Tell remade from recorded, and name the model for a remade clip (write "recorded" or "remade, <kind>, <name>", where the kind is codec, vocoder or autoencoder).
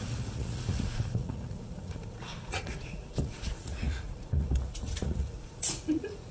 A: remade, vocoder, Vocos